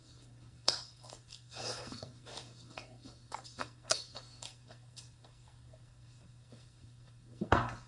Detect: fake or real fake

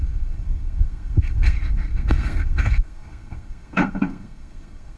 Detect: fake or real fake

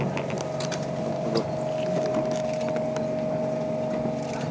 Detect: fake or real real